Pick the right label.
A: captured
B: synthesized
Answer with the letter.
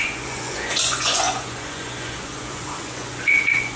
B